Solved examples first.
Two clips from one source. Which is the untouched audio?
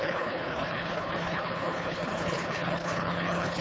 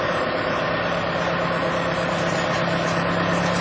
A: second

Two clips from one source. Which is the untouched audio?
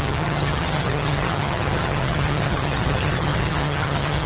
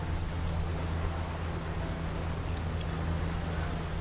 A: second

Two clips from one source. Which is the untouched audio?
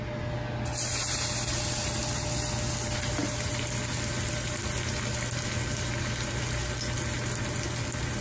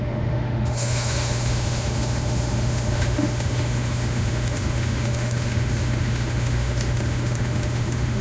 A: first